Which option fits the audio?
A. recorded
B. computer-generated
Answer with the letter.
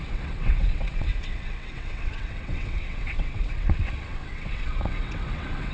B